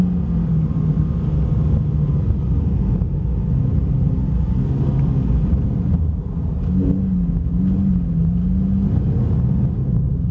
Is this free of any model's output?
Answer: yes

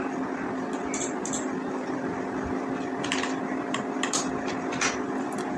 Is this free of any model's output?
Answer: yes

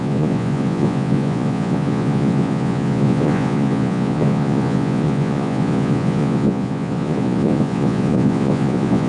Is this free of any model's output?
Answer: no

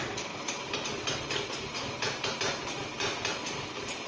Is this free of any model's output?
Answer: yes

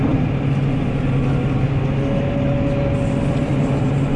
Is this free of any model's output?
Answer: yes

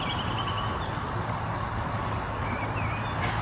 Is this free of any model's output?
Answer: yes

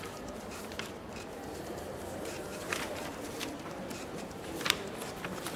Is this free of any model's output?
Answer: no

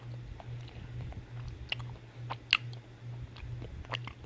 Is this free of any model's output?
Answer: yes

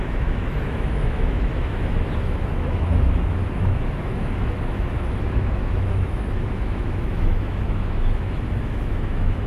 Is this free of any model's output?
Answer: no